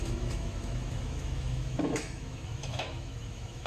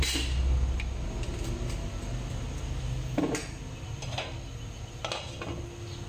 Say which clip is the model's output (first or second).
first